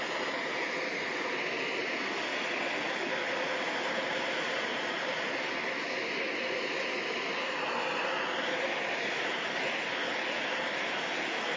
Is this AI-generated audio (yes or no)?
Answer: no